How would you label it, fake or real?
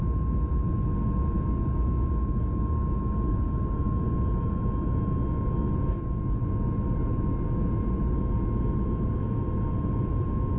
real